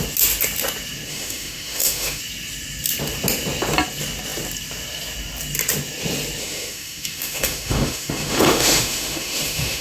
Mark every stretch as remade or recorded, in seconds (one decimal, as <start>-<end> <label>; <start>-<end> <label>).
0.0-1.1 recorded; 1.1-2.2 remade; 2.2-6.4 recorded; 6.4-9.8 remade